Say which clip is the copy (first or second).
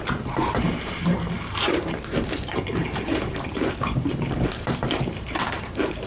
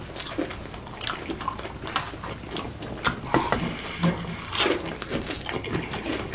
first